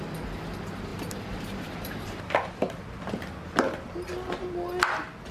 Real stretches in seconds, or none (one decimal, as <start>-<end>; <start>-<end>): 0.0-0.9; 3.0-5.3